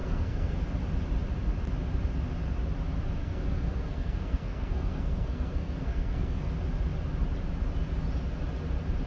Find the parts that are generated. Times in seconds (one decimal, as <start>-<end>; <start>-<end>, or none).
0.0-0.6; 3.2-6.5